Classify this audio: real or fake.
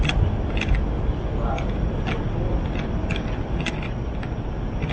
real